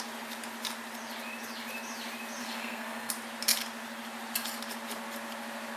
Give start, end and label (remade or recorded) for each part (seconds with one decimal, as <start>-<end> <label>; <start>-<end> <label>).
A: 0.0-2.4 recorded; 2.4-3.1 remade; 3.1-5.8 recorded